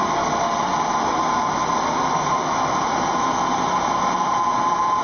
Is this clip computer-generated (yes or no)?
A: no